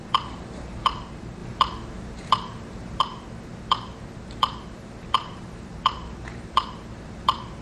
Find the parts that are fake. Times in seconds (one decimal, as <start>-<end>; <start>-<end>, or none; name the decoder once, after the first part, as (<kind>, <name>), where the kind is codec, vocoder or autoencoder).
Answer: 0.0-7.6 (vocoder, BigVGAN v2)